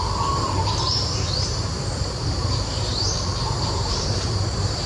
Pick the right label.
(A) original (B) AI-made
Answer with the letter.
B